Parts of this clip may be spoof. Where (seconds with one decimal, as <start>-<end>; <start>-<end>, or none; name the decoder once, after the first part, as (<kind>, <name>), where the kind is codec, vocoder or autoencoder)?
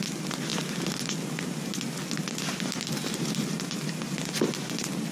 none